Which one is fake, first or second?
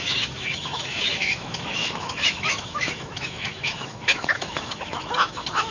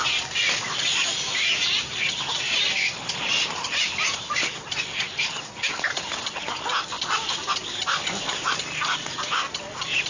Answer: first